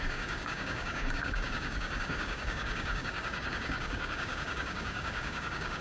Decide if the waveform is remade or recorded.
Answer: remade